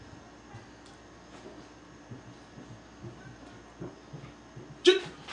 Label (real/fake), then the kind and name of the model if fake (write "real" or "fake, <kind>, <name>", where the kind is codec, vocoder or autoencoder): real